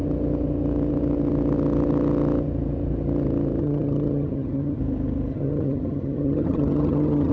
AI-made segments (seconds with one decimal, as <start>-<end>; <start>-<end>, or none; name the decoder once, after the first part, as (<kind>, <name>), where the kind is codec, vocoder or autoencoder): 3.6-4.8 (vocoder, HiFi-GAN); 5.3-7.3